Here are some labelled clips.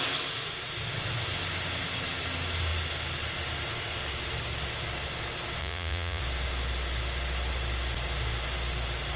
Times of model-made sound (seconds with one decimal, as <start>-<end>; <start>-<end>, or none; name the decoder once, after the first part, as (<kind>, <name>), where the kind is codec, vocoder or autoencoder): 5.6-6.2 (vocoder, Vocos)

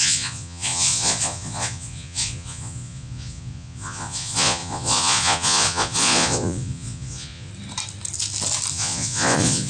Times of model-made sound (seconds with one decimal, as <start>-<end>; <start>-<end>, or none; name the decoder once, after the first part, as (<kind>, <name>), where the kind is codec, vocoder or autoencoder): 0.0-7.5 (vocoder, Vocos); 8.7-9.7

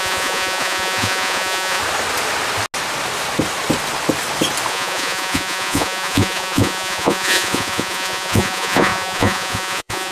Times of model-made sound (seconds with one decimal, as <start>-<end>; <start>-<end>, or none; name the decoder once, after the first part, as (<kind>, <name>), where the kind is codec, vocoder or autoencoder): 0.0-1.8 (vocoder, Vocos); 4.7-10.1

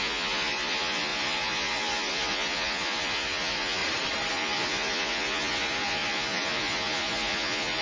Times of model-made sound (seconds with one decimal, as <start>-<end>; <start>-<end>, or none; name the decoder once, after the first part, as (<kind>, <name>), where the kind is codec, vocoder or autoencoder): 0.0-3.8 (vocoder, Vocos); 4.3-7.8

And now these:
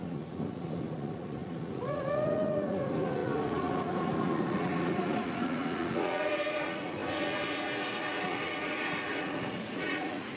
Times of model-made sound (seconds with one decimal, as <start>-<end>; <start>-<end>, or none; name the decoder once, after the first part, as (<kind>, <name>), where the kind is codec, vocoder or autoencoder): 0.0-10.4 (vocoder, Vocos)

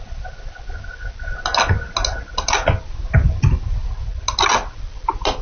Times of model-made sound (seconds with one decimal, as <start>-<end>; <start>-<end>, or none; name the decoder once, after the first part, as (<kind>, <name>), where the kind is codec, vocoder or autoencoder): none

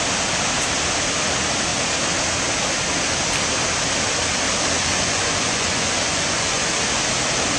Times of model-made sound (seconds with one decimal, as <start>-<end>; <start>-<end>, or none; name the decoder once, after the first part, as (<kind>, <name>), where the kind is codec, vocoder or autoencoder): 4.8-6.7 (vocoder, Vocos)